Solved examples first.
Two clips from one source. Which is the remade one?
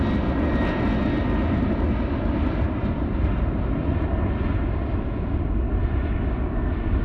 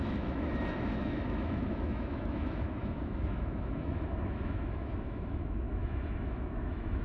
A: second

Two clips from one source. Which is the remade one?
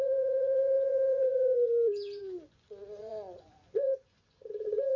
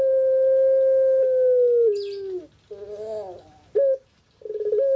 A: first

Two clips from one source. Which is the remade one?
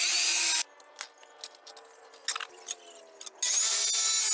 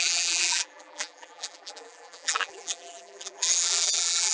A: second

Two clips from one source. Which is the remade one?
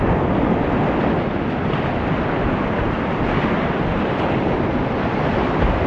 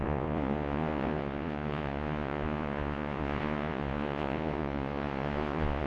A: second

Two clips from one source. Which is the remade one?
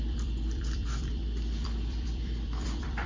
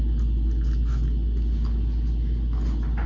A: first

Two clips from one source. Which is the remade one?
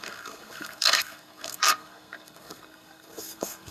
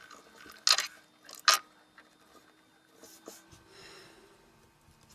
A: first